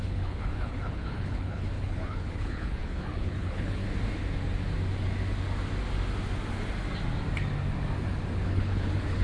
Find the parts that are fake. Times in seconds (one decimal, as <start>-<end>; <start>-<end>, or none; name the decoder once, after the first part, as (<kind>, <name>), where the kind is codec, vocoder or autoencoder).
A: 0.0-3.8 (codec, HILCodec); 8.4-9.2